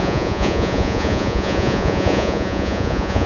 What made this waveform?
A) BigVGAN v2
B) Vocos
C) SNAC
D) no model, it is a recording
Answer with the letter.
B